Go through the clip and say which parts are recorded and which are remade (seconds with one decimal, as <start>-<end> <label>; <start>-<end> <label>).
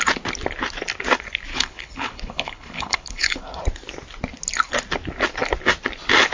0.0-1.5 recorded; 1.5-3.4 remade; 3.4-6.3 recorded